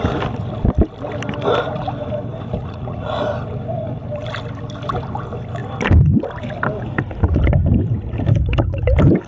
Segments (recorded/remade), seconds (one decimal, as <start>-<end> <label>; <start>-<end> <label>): 0.0-2.6 recorded; 2.6-3.2 remade; 3.2-9.3 recorded